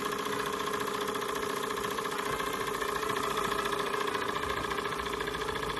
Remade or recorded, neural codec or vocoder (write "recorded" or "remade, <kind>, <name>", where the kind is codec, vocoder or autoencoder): recorded